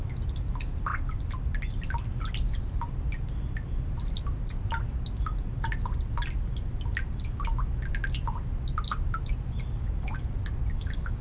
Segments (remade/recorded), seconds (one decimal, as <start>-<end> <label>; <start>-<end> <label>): 0.0-11.2 recorded